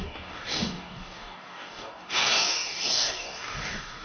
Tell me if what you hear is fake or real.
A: fake